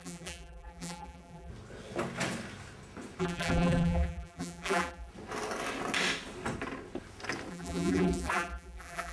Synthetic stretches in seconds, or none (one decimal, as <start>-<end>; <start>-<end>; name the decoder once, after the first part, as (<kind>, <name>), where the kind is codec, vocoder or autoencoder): 0.0-1.5 (vocoder, BigVGAN v2); 3.2-5.1; 7.5-9.1